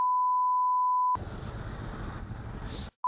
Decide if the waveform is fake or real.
real